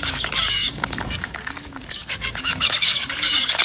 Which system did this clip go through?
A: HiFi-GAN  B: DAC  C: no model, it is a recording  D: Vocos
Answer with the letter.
B